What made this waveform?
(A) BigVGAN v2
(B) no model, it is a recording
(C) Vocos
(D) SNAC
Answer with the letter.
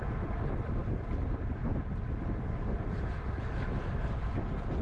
B